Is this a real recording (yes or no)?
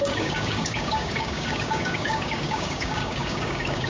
no